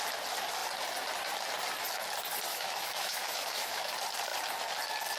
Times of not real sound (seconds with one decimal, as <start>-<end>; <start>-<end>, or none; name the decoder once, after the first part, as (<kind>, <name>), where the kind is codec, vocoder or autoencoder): 2.5-3.9 (autoencoder, DAC-VAE)